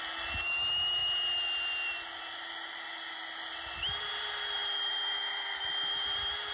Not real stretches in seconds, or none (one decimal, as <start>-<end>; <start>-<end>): none